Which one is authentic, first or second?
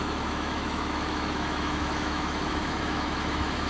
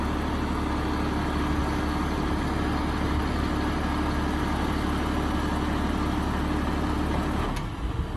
second